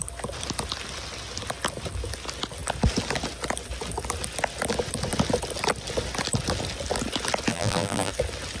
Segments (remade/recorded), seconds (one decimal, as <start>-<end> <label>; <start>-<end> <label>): 0.0-7.5 recorded; 7.5-8.1 remade; 8.1-8.6 recorded